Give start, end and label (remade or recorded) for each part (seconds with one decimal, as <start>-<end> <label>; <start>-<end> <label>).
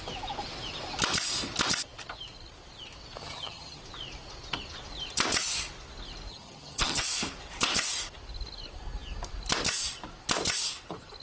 0.0-3.2 recorded; 3.2-3.8 remade; 3.8-6.3 recorded; 6.3-7.0 remade; 7.0-11.2 recorded